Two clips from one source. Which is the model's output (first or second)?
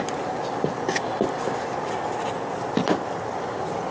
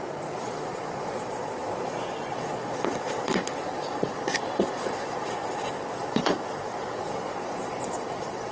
second